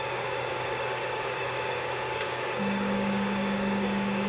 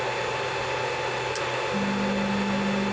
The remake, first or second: first